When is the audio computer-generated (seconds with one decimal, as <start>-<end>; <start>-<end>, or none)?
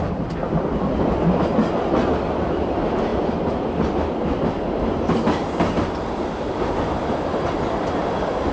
none